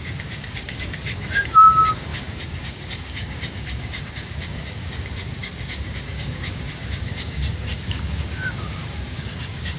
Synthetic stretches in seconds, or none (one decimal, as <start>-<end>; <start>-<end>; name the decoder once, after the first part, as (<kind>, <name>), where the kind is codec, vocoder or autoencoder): 0.0-9.8 (codec, DAC)